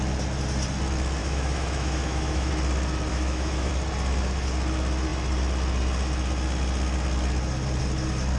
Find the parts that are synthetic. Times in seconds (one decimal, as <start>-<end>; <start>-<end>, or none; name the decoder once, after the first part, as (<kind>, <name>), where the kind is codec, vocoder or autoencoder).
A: 1.2-2.5 (autoencoder, DAC-VAE); 3.1-3.7